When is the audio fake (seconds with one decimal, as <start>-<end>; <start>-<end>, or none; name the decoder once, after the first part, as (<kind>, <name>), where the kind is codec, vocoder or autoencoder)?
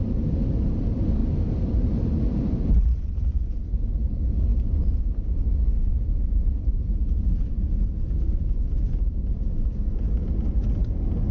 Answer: 1.2-3.8 (vocoder, BigVGAN v2); 4.5-5.0; 5.9-9.5